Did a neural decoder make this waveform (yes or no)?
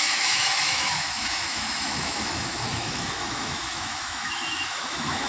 yes